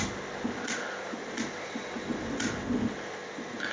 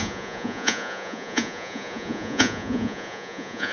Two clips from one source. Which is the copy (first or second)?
second